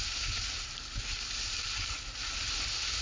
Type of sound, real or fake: real